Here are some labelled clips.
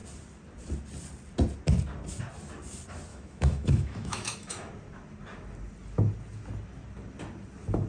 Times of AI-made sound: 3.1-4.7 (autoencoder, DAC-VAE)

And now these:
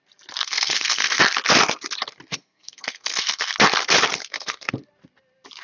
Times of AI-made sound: 0.4-1.2 (codec, SNAC); 2.3-3.5; 4.2-4.7

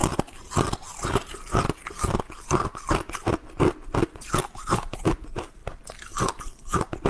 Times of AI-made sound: 4.3-5.6 (vocoder, BigVGAN v2); 6.4-7.1

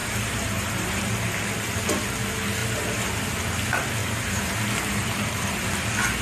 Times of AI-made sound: 0.0-1.0 (vocoder, BigVGAN v2); 2.6-3.2; 4.0-4.6; 5.0-5.7

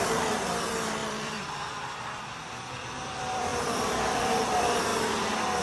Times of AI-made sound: 0.0-3.5 (vocoder, BigVGAN v2); 4.2-4.9

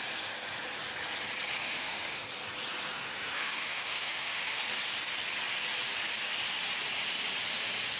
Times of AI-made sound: 1.6-2.2 (autoencoder, DAC-VAE); 2.9-4.6

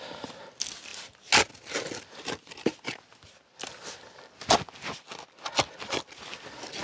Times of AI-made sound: none

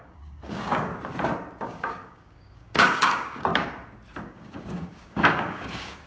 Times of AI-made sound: 0.0-0.9 (codec, DAC); 1.6-3.5; 4.2-6.1